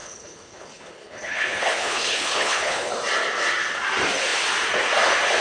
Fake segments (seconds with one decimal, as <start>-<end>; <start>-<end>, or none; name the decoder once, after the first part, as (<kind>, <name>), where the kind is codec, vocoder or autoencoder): 0.0-2.9 (codec, HILCodec)